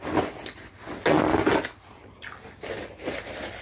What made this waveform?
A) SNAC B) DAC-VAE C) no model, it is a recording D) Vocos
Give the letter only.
C